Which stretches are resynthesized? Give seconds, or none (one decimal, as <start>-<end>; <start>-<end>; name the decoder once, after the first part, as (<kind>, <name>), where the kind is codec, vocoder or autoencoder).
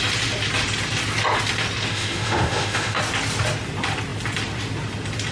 1.9-3.0 (autoencoder, DAC-VAE)